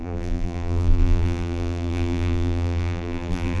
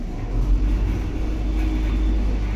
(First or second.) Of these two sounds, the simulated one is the first